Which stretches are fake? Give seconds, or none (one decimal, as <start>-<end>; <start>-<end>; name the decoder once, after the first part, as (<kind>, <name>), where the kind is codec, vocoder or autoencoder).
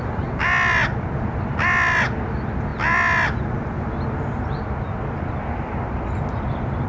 none